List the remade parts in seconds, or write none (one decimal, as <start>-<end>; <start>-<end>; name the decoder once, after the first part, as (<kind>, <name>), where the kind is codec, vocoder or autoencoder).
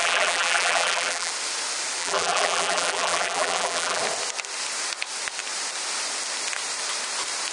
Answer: 0.0-1.3 (vocoder, BigVGAN v2); 2.0-4.0